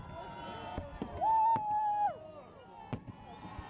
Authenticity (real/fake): real